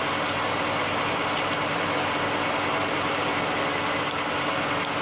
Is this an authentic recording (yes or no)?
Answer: yes